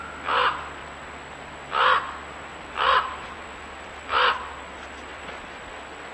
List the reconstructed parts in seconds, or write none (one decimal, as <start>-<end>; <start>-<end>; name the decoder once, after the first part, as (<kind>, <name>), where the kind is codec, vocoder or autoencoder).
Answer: 2.5-4.3 (vocoder, BigVGAN v2); 5.1-5.6